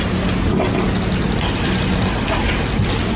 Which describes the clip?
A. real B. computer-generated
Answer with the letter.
A